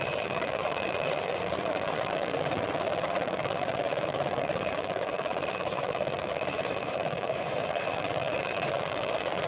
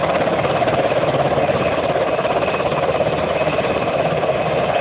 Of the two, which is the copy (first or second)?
first